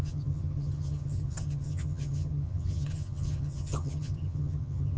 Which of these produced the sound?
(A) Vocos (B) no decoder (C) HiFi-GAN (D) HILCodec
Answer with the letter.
C